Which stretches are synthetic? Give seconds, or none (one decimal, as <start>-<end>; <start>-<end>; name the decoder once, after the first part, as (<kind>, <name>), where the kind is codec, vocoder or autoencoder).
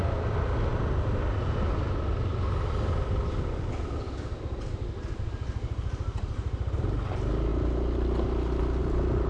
none